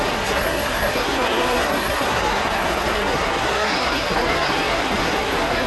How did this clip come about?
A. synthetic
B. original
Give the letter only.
A